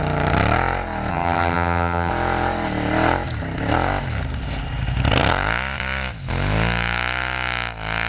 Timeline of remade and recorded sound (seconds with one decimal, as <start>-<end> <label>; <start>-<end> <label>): 0.0-1.1 recorded; 1.1-2.1 remade; 2.1-8.1 recorded